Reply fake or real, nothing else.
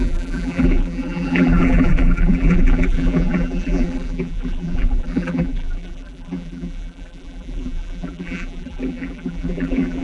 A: fake